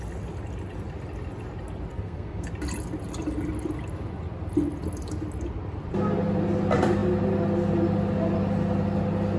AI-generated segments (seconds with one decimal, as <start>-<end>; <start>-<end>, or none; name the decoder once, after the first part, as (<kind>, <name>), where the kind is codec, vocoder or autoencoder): 1.9-2.5 (codec, SNAC)